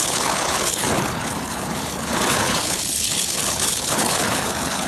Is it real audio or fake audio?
fake